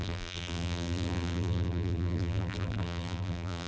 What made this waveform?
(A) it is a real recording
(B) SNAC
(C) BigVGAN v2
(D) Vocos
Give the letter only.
C